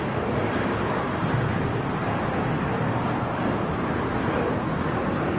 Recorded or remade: remade